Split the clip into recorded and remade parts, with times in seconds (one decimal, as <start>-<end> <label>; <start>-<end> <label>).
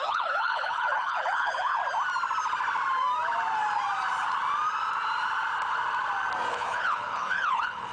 0.0-1.8 remade; 1.8-6.5 recorded; 6.5-7.9 remade